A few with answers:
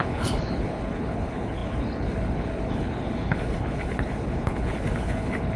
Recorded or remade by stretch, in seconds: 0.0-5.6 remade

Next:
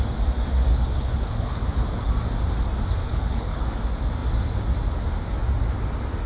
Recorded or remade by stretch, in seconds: 0.0-0.7 recorded; 0.7-2.1 remade; 2.1-3.0 recorded; 3.0-3.8 remade; 3.8-6.3 recorded

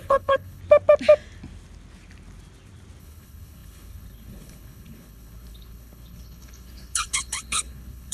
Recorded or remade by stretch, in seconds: 0.0-0.6 remade; 0.6-3.0 recorded; 3.0-8.1 remade

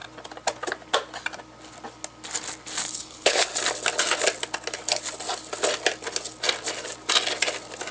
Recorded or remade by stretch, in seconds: 0.0-3.0 recorded; 3.0-3.5 remade; 3.5-7.9 recorded

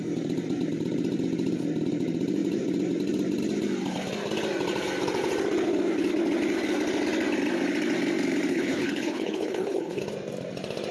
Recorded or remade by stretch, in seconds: 0.0-8.5 recorded; 8.5-10.0 remade; 10.0-10.9 recorded